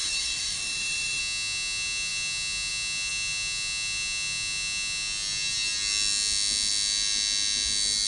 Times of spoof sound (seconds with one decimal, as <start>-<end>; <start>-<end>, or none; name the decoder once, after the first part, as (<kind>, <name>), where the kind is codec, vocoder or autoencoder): 0.0-1.2 (autoencoder, DAC-VAE)